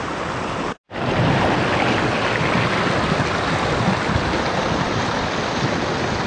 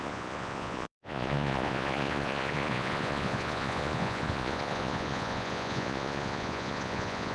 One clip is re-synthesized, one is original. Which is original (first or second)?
first